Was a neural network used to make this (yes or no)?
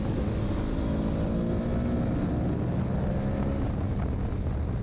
no